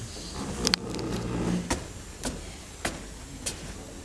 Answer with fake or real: real